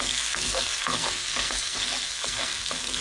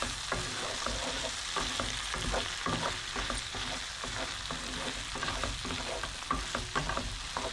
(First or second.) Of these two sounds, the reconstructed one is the first